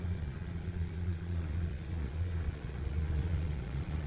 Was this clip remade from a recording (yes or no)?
yes